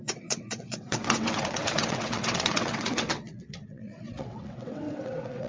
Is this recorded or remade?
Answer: remade